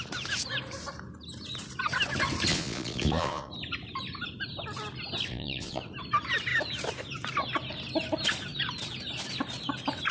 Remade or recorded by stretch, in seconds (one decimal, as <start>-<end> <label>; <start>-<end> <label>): 0.0-2.5 recorded; 2.5-3.5 remade; 3.5-5.3 recorded; 5.3-5.8 remade; 5.8-10.1 recorded